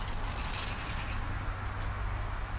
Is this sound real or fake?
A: real